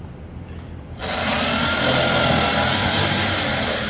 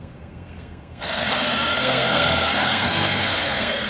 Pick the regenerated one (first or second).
second